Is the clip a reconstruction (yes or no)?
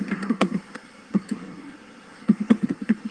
yes